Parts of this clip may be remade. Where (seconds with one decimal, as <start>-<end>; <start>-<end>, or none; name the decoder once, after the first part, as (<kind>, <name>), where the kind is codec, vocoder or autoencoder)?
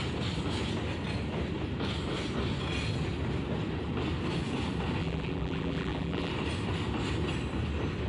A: 5.0-6.3 (vocoder, BigVGAN v2)